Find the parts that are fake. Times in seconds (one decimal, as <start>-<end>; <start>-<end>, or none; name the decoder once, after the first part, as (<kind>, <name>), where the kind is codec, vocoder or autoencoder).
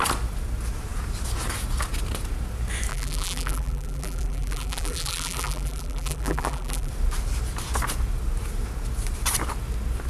2.9-6.9 (vocoder, BigVGAN v2)